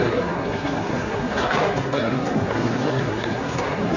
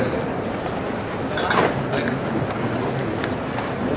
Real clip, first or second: second